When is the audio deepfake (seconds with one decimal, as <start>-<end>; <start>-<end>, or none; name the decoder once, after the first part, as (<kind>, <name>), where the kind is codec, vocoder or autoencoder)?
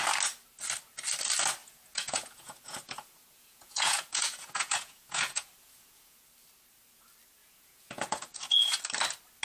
1.6-6.2 (vocoder, Vocos); 7.4-8.8